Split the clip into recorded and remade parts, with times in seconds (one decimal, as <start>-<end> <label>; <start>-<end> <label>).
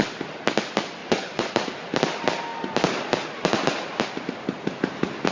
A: 0.0-1.0 recorded; 1.0-1.5 remade; 1.5-5.3 recorded